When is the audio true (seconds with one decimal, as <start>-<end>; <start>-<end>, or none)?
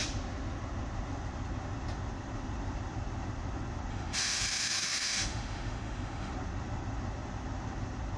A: 0.0-3.9; 6.3-8.2